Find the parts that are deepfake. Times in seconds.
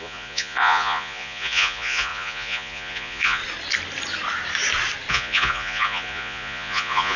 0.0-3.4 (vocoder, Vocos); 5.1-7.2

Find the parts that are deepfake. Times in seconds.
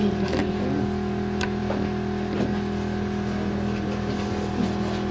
none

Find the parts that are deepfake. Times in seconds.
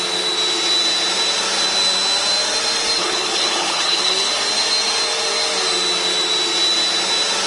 3.0-4.3 (codec, HILCodec)